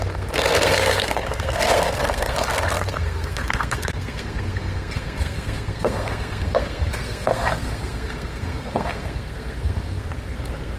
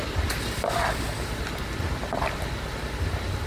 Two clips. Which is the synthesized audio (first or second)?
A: first